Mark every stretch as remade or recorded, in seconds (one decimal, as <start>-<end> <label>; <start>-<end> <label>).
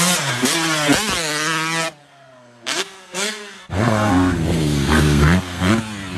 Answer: 0.0-2.0 recorded; 2.0-5.7 remade; 5.7-6.2 recorded